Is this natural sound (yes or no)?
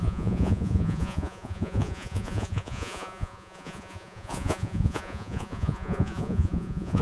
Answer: no